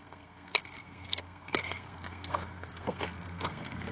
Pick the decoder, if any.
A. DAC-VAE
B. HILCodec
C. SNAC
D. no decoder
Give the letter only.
C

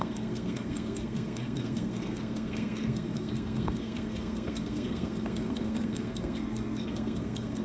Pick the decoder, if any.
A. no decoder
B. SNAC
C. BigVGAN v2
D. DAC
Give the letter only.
B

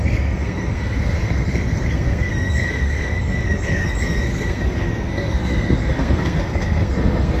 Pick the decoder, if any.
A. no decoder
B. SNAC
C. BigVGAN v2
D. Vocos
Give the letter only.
B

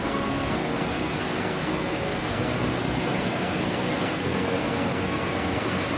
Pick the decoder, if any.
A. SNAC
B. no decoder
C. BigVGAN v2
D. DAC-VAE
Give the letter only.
A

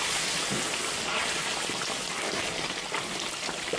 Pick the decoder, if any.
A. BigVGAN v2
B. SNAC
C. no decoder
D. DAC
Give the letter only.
C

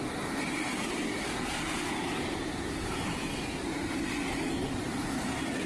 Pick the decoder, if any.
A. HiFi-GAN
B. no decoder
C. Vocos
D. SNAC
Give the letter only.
B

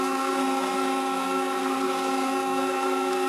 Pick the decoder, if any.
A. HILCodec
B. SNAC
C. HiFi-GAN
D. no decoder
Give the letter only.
B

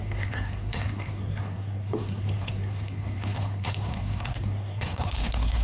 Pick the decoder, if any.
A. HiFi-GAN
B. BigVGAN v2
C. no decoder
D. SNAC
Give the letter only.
D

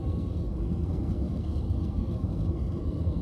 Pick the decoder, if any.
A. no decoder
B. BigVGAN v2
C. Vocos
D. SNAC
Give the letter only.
D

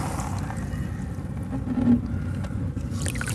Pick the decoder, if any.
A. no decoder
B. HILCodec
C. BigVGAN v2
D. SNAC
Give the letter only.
A